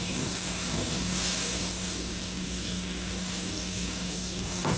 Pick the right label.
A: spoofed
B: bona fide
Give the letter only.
A